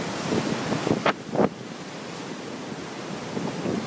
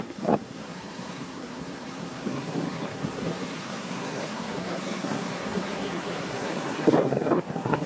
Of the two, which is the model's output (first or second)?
second